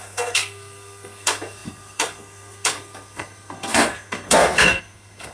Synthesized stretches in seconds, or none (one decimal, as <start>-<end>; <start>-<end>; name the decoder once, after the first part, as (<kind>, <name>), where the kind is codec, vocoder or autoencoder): 0.0-5.3 (codec, SNAC)